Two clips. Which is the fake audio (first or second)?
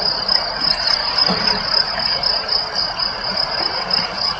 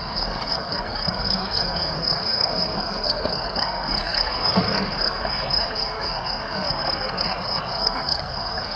second